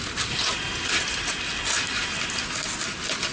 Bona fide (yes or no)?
yes